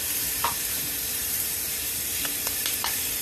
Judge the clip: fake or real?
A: fake